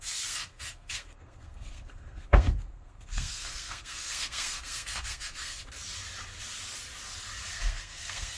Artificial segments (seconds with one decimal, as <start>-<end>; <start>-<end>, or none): 0.0-5.6; 7.5-8.4